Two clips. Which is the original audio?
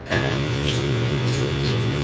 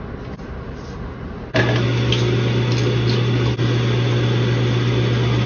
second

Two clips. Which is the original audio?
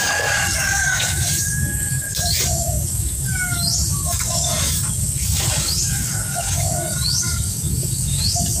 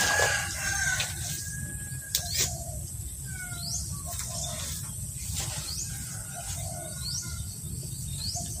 second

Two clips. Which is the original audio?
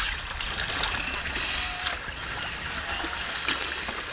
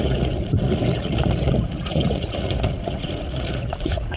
first